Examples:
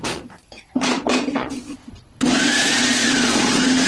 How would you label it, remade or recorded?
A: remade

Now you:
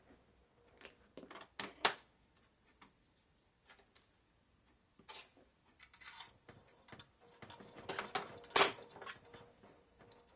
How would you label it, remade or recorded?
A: recorded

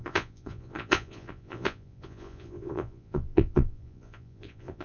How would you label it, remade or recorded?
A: remade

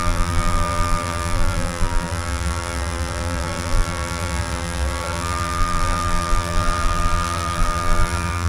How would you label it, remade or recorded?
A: remade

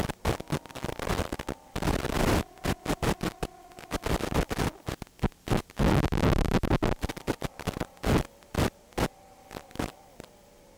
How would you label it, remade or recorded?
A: recorded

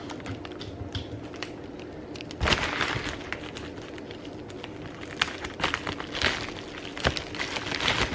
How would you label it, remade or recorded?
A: recorded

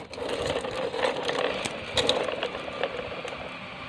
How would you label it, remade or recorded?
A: recorded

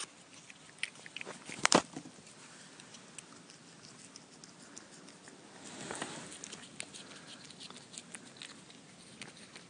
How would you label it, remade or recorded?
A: recorded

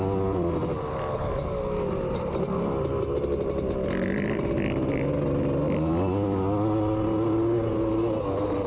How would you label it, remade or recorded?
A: recorded